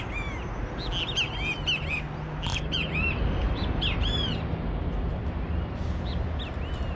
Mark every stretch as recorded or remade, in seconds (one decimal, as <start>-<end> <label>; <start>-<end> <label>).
0.0-2.5 recorded; 2.5-3.2 remade; 3.2-5.2 recorded; 5.2-5.8 remade; 5.8-7.0 recorded